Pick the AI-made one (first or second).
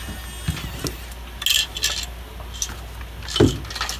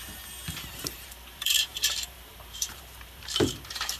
second